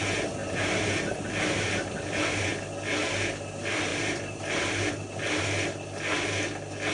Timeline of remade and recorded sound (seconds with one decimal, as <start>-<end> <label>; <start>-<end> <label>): 0.0-0.4 recorded; 0.4-2.5 remade; 2.5-3.9 recorded; 3.9-4.9 remade; 4.9-6.9 recorded